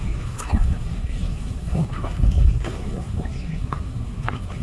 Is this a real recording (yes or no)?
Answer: no